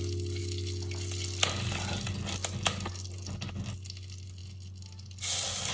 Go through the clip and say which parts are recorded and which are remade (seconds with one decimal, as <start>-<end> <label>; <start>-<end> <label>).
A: 0.0-5.7 recorded